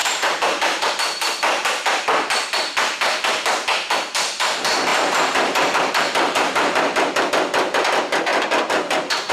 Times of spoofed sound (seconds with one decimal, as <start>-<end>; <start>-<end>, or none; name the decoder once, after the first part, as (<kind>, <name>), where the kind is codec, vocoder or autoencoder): 0.0-0.9 (vocoder, BigVGAN v2); 4.9-7.3; 8.3-9.3